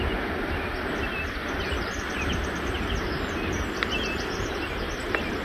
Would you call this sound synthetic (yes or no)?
no